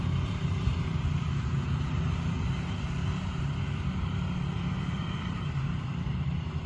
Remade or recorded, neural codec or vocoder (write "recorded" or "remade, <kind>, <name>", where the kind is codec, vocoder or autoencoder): remade, vocoder, BigVGAN v2